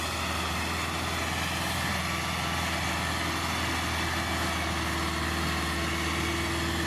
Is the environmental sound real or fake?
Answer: real